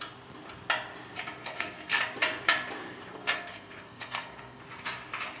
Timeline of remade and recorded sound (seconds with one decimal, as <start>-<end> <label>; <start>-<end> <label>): 0.0-1.4 recorded; 1.4-2.0 remade; 2.0-3.1 recorded; 3.1-4.6 remade; 4.6-5.4 recorded

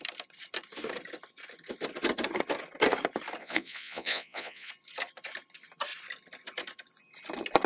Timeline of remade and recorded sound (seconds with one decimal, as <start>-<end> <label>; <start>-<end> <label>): 0.0-3.4 recorded; 3.4-4.7 remade; 4.7-7.7 recorded